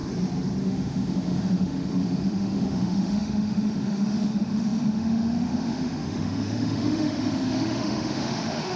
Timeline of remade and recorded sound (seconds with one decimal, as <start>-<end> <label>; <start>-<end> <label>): 0.0-0.6 recorded; 0.6-8.8 remade

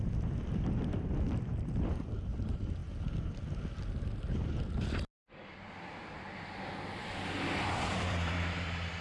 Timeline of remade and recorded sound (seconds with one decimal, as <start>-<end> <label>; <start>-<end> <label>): 0.0-2.8 remade; 2.8-7.6 recorded; 7.6-9.0 remade

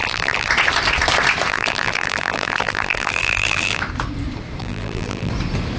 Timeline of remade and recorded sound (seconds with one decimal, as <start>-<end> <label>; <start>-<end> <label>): 0.0-0.5 remade; 0.5-1.5 recorded; 1.5-3.8 remade; 3.8-4.6 recorded; 4.6-5.3 remade; 5.3-5.8 recorded

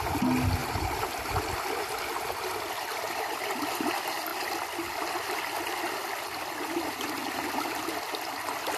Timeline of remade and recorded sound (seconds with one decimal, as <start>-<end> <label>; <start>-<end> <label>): 0.0-0.6 recorded; 0.6-1.5 remade; 1.5-8.8 recorded

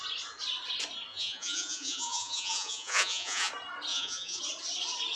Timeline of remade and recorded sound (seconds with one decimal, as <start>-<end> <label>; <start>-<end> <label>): 0.0-1.1 recorded; 1.1-3.5 remade; 3.5-3.9 recorded; 3.9-4.4 remade; 4.4-5.2 recorded

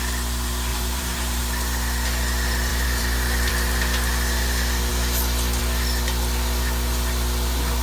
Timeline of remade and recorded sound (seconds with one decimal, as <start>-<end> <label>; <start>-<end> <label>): 0.0-0.7 recorded; 0.7-1.4 remade; 1.4-2.7 recorded; 2.7-3.5 remade; 3.5-7.8 recorded

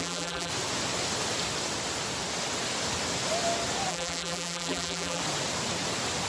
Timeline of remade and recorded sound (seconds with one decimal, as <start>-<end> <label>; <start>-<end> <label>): 0.0-0.5 remade; 0.5-3.9 recorded; 3.9-5.2 remade; 5.2-6.3 recorded